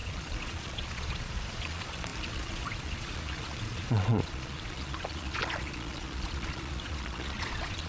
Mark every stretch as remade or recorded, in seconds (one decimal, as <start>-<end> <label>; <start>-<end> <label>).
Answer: 0.0-7.9 remade